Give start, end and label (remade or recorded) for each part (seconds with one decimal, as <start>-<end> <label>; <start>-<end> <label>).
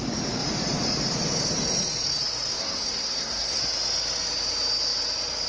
0.0-2.5 recorded; 2.5-3.6 remade; 3.6-5.5 recorded